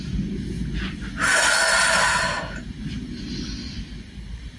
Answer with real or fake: real